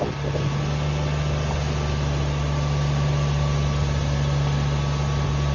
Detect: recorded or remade recorded